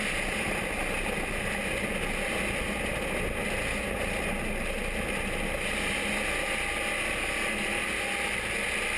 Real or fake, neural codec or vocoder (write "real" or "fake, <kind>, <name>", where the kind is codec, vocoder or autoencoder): real